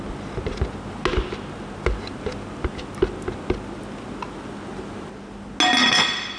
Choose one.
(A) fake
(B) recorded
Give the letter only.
B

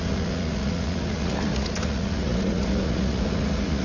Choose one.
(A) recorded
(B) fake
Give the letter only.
B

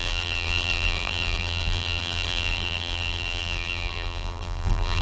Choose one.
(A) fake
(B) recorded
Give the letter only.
A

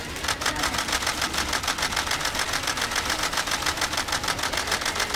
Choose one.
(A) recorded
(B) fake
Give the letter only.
A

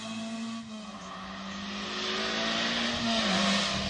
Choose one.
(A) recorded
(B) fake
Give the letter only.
A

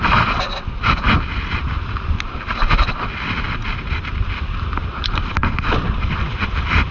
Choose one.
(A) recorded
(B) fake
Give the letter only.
A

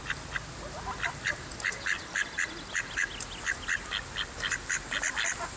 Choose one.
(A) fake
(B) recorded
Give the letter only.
B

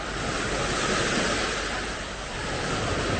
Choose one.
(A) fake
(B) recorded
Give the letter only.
B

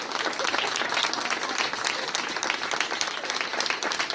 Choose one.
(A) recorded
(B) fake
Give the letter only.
A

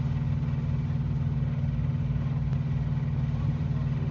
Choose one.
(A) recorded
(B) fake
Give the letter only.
A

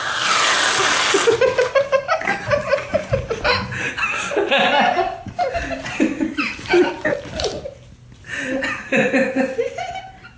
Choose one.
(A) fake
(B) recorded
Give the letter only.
B